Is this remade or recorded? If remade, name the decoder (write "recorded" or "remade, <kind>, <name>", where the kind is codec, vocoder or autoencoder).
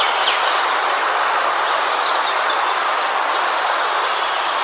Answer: recorded